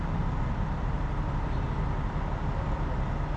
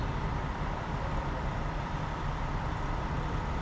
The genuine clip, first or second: first